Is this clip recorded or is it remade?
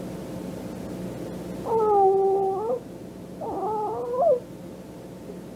recorded